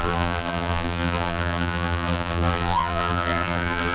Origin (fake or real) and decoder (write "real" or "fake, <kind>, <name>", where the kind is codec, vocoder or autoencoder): fake, vocoder, BigVGAN v2